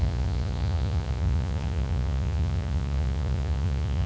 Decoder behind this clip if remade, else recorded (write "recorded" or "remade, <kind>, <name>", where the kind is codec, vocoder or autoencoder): remade, vocoder, Vocos